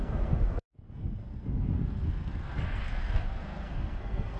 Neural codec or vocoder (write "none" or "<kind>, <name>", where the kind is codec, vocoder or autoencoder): codec, SNAC